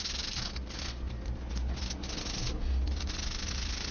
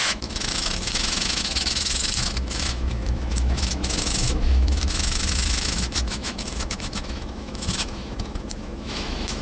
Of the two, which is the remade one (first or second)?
second